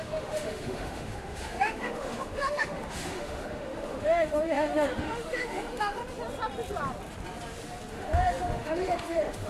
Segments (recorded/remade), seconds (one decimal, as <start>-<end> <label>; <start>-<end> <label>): 0.0-6.0 remade; 6.0-7.9 recorded; 7.9-9.5 remade